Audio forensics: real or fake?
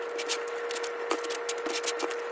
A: real